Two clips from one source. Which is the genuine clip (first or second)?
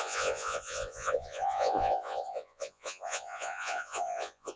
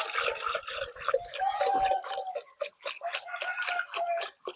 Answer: second